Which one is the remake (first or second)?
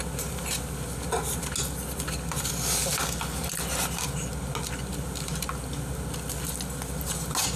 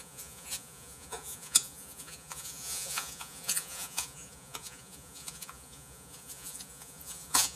second